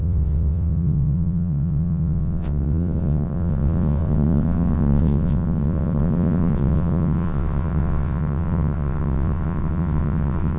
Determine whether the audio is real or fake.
fake